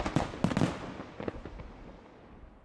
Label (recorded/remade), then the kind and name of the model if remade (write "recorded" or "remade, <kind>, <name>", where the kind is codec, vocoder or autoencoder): recorded